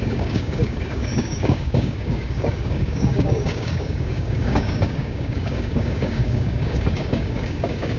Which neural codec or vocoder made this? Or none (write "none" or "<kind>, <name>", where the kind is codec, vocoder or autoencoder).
codec, DAC